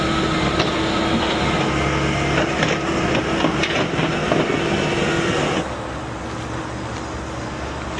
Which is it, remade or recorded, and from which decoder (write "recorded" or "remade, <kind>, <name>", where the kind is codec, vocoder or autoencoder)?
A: recorded